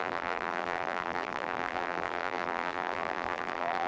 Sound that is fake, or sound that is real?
fake